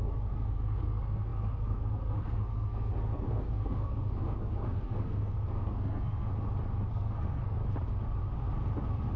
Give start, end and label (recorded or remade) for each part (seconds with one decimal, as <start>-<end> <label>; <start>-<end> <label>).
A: 0.0-6.3 remade; 6.3-6.9 recorded; 6.9-7.6 remade; 7.6-9.2 recorded